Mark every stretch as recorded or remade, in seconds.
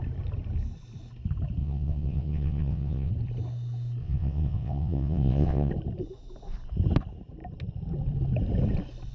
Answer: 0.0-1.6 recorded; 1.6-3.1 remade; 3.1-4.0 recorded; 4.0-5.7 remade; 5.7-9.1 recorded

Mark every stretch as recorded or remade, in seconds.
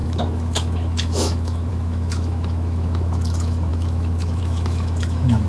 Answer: 0.0-5.5 remade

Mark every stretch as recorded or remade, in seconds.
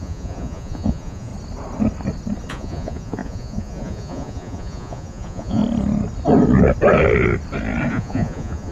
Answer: 0.0-1.3 remade; 1.3-2.5 recorded; 2.5-5.6 remade; 5.6-7.9 recorded; 7.9-8.7 remade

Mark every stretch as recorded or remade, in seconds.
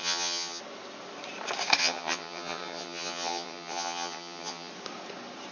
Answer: 0.0-0.6 remade; 0.6-1.8 recorded; 1.8-4.7 remade; 4.7-5.5 recorded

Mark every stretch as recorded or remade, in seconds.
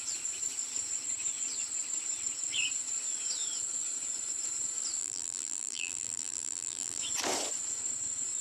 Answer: 0.0-5.0 recorded; 5.0-7.0 remade; 7.0-8.4 recorded